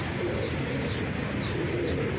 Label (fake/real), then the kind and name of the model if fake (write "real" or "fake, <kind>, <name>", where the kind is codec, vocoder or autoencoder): real